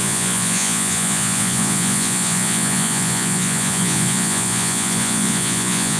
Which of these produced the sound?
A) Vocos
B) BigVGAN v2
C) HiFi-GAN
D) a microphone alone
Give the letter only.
A